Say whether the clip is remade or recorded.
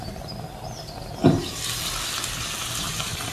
recorded